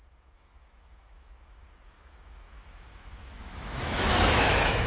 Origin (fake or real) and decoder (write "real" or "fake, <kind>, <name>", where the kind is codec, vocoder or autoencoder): fake, autoencoder, DAC-VAE